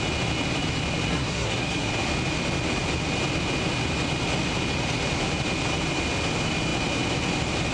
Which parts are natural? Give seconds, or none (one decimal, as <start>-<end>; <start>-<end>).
0.0-1.1; 1.9-7.7